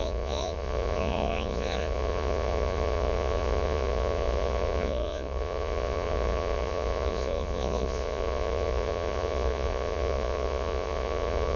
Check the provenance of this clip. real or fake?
fake